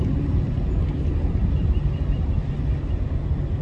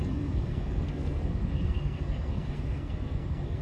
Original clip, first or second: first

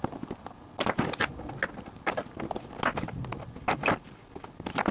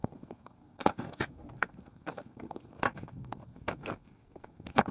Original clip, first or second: first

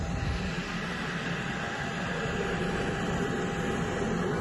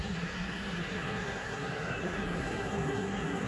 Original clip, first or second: first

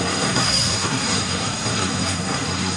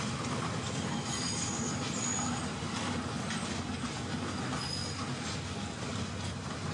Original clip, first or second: second